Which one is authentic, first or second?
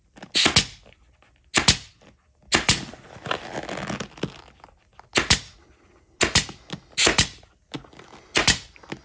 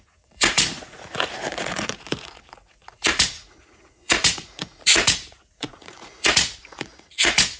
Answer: first